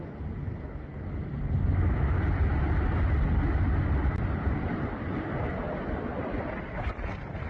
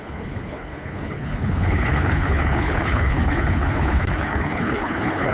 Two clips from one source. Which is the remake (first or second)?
second